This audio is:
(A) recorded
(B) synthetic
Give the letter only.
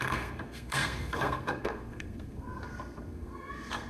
B